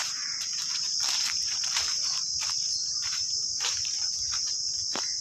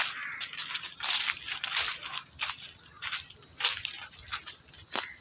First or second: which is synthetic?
first